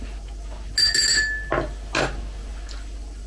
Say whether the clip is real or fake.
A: real